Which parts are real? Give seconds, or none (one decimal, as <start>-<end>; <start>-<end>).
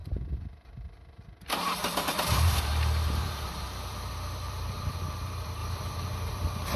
none